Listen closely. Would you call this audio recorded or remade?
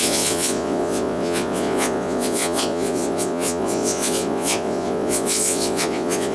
remade